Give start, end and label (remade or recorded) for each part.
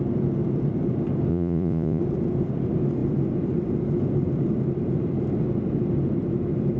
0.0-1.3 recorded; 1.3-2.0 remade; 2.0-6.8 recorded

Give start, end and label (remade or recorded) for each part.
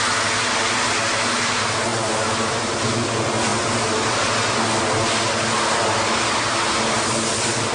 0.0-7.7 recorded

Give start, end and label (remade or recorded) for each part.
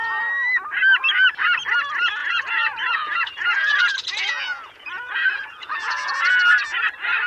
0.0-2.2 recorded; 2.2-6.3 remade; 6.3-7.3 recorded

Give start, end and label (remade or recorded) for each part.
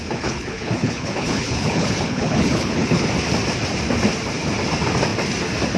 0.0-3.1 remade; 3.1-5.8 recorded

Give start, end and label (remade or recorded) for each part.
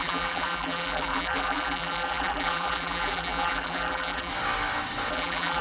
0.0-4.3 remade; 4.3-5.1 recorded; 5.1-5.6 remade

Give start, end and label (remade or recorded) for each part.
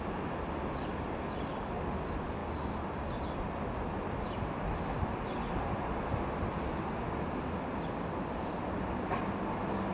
0.0-9.9 recorded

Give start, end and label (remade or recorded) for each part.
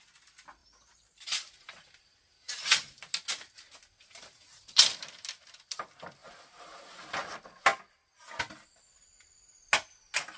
0.0-0.6 recorded; 0.6-3.0 remade; 3.0-6.2 recorded; 6.2-6.8 remade; 6.8-10.4 recorded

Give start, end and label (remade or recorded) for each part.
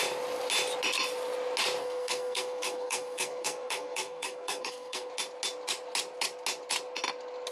0.0-1.8 recorded; 1.8-5.1 remade; 5.1-7.5 recorded